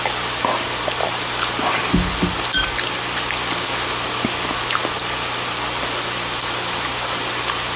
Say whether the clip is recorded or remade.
recorded